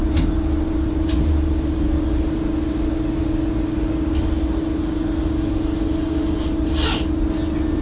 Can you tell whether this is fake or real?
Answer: real